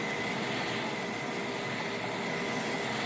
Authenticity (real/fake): real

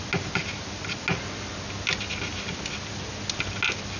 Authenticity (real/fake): real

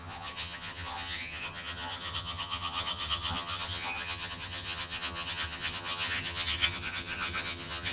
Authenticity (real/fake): fake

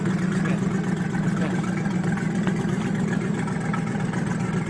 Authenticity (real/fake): real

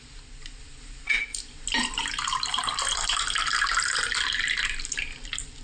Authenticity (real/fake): real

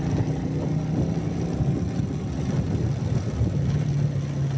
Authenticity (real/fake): real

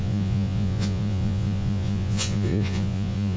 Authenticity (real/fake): fake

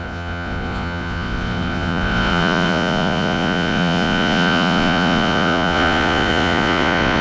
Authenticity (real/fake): fake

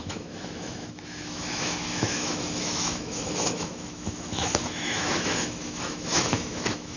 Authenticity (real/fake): fake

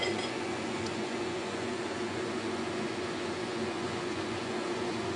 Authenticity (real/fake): fake